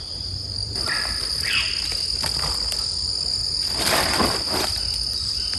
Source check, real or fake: real